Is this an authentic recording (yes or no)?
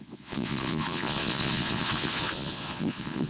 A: no